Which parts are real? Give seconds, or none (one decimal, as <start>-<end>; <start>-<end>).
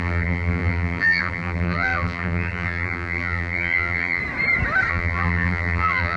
4.2-4.9